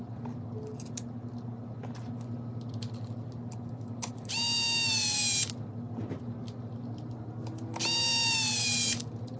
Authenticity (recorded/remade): recorded